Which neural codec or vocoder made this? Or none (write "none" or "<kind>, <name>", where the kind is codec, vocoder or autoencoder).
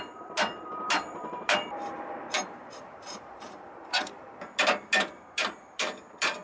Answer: vocoder, BigVGAN v2